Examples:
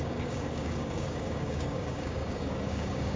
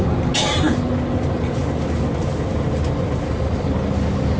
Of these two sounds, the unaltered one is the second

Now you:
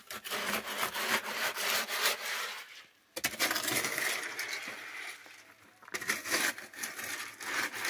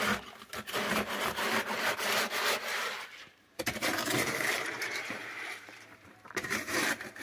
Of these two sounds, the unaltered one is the first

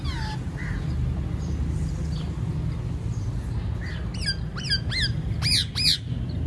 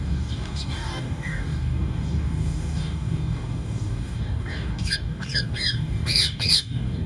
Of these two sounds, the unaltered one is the first